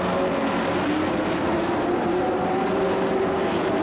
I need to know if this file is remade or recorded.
recorded